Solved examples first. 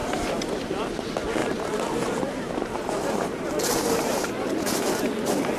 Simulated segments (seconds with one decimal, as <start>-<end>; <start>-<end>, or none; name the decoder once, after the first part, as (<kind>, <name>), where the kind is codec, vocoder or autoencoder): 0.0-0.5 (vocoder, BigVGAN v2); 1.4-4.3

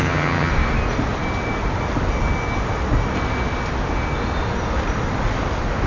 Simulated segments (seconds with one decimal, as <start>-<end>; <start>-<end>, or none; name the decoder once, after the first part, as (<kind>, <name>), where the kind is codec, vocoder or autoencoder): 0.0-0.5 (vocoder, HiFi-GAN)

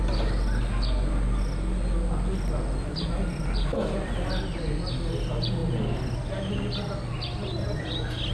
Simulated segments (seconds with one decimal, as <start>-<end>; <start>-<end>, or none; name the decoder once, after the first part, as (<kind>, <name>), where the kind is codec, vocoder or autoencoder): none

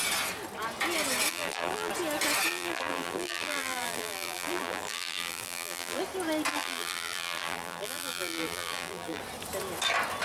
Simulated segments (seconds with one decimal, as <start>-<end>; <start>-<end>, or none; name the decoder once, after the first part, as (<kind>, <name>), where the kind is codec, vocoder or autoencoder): 1.3-1.9 (vocoder, BigVGAN v2); 2.5-6.0; 6.5-9.2

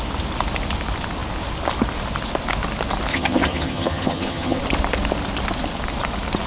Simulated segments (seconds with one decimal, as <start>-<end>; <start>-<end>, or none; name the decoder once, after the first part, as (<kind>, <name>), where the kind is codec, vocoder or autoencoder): 3.1-4.6 (vocoder, HiFi-GAN)